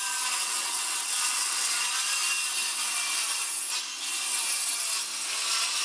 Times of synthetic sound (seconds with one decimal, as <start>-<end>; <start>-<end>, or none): 0.4-1.7